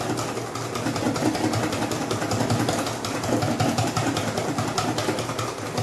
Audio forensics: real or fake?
real